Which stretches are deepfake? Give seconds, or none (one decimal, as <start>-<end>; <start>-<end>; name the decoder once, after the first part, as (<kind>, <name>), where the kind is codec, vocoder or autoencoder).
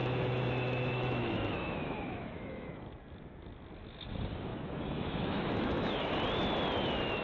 0.0-2.8 (autoencoder, DAC-VAE); 4.5-6.1